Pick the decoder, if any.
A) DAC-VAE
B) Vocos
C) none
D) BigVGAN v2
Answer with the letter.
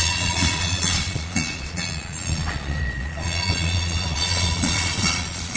B